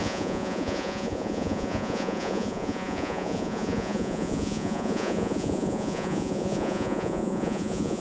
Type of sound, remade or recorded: remade